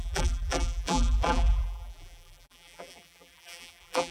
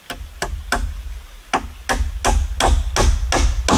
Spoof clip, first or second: first